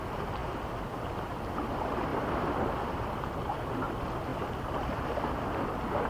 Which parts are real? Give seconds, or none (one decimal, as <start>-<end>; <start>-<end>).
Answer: 0.0-6.1